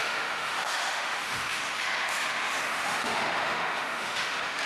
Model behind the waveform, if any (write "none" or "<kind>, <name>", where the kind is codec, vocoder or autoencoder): autoencoder, DAC-VAE